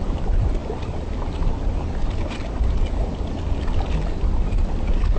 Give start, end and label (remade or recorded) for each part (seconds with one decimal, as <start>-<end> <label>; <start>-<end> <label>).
0.0-5.2 recorded